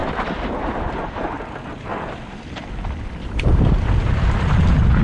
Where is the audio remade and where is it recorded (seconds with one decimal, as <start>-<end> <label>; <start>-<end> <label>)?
0.0-1.9 recorded; 1.9-5.0 remade